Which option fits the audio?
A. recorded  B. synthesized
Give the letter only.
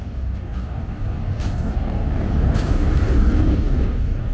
B